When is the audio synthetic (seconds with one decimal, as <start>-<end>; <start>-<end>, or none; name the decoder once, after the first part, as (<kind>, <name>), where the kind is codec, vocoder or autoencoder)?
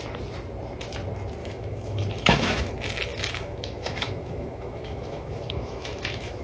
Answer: 1.4-2.7 (autoencoder, DAC-VAE); 3.1-6.4